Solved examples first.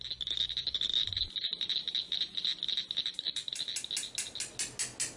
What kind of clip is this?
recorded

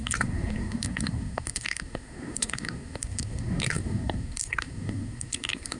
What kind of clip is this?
remade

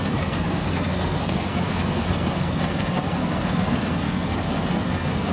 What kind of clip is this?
remade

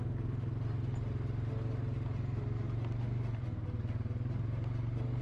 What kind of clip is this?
recorded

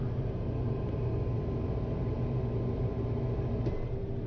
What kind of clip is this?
recorded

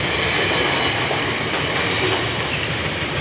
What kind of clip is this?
recorded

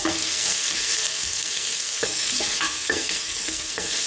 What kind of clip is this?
remade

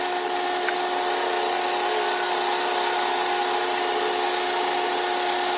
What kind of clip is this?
recorded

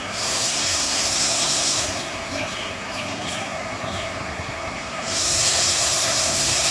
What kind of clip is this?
remade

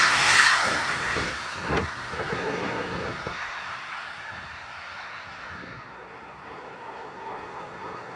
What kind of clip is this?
remade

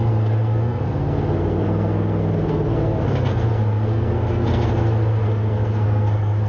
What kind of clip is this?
remade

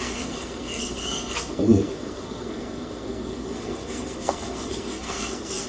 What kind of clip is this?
remade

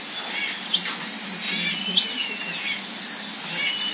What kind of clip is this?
recorded